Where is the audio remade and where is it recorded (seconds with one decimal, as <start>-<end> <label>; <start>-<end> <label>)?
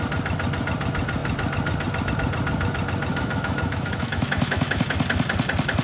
0.0-3.1 recorded; 3.1-4.8 remade; 4.8-5.8 recorded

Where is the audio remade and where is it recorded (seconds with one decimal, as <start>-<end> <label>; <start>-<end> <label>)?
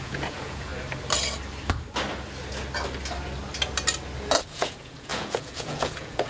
0.0-0.7 remade; 0.7-4.5 recorded; 4.5-6.3 remade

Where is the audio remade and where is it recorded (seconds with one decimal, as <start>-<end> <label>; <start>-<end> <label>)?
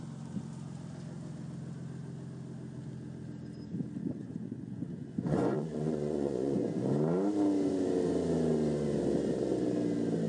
0.0-4.2 recorded; 4.2-6.6 remade; 6.6-10.3 recorded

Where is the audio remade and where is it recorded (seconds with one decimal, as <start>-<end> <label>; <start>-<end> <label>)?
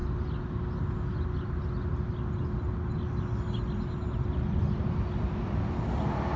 0.0-6.4 recorded